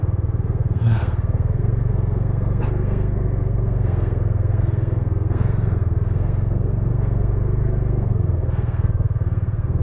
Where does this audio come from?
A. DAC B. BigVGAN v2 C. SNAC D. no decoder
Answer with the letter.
C